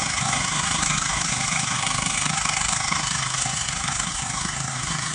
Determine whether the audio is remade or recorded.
remade